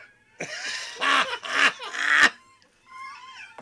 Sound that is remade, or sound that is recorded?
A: recorded